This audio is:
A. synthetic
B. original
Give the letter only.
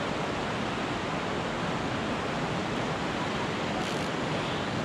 B